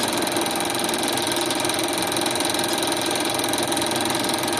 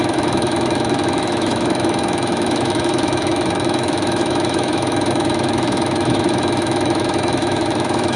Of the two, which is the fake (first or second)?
second